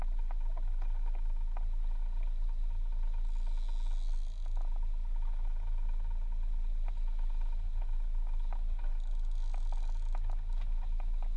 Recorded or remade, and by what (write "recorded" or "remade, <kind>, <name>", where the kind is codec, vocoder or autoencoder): recorded